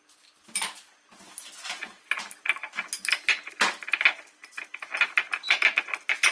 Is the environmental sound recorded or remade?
recorded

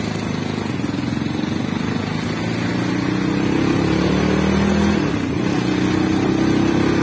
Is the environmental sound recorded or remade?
recorded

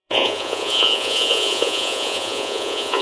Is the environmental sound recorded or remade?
remade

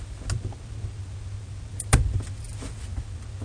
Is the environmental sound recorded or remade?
recorded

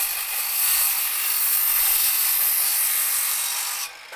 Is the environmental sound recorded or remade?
recorded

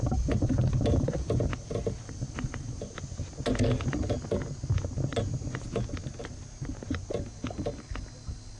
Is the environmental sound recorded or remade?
recorded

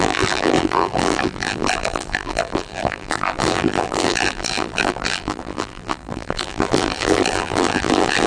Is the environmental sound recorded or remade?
remade